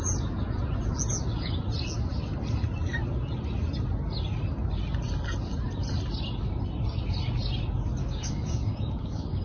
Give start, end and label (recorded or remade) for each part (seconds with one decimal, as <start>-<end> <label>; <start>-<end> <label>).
0.0-8.0 recorded; 8.0-9.4 remade